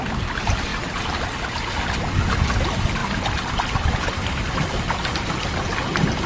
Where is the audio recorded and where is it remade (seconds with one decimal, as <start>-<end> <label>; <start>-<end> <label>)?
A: 0.0-0.7 recorded; 0.7-1.2 remade; 1.2-6.3 recorded